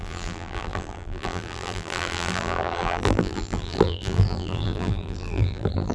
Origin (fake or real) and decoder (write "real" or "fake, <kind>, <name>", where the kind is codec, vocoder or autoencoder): fake, vocoder, BigVGAN v2